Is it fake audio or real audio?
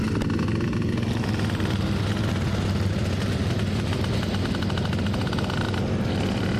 real